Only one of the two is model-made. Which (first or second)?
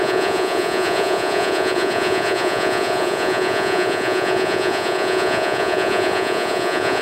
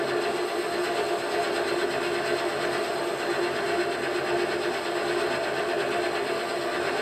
first